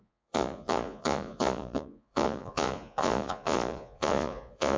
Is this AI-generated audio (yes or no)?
yes